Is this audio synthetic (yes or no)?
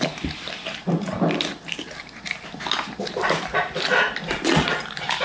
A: no